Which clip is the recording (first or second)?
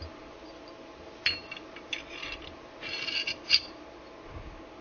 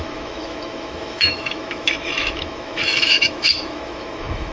first